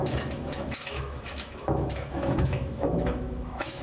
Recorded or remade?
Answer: remade